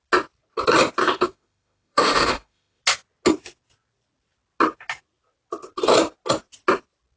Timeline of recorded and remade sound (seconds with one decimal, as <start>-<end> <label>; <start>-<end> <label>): 0.0-1.0 recorded; 1.0-2.8 remade; 2.8-7.2 recorded